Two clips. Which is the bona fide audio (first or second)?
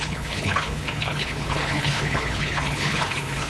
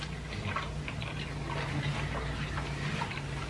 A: second